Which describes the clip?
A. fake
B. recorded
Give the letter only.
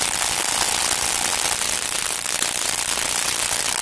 B